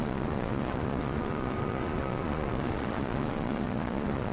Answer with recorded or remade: remade